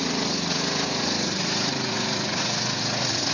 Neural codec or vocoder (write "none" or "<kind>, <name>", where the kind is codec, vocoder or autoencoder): vocoder, Vocos